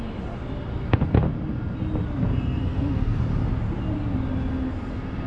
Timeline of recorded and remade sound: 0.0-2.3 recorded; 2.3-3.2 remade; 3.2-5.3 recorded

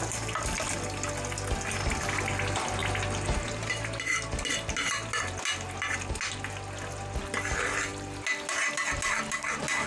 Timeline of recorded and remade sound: 0.0-9.9 recorded

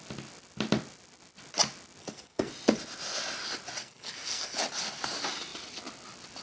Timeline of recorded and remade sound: 0.0-2.0 recorded; 2.0-2.5 remade; 2.5-3.8 recorded; 3.8-4.6 remade; 4.6-6.4 recorded

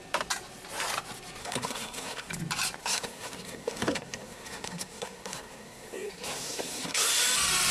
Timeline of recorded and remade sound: 0.0-1.4 recorded; 1.4-2.3 remade; 2.3-2.8 recorded; 2.8-7.1 remade; 7.1-7.7 recorded

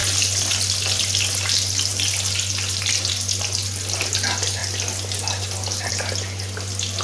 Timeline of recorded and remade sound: 0.0-7.0 recorded